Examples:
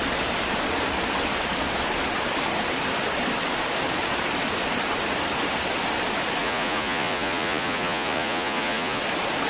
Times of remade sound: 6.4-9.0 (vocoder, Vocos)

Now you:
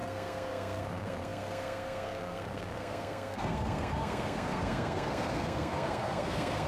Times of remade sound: 0.0-6.7 (codec, SNAC)

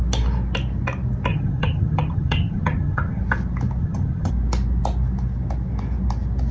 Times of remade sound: 1.3-3.2 (vocoder, HiFi-GAN); 3.8-4.3

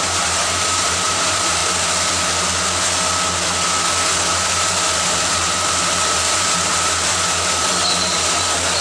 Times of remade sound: 0.0-1.6 (vocoder, BigVGAN v2); 4.3-8.8